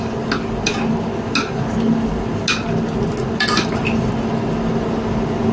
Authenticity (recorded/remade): recorded